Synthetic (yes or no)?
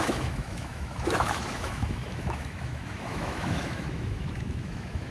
yes